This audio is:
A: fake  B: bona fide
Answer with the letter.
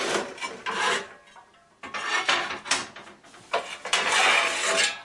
B